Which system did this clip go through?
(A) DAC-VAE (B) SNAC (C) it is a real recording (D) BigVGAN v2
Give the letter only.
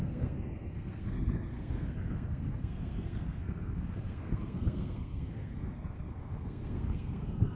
B